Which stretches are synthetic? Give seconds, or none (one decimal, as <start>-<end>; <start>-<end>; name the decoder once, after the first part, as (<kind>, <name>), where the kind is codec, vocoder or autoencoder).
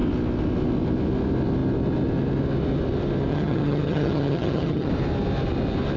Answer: 3.3-4.9 (vocoder, HiFi-GAN)